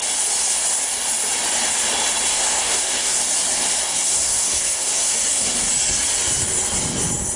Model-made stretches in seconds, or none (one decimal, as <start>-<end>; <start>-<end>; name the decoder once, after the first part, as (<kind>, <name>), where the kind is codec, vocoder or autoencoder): 2.3-3.2 (codec, SNAC); 3.8-5.7